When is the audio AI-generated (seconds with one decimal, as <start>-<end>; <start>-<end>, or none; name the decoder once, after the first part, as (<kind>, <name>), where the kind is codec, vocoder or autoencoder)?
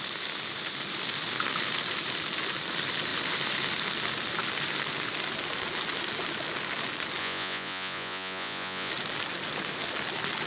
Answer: 7.2-8.9 (vocoder, Vocos)